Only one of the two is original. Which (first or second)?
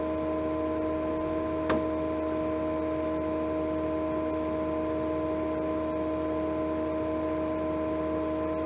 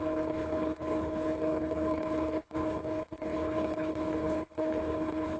first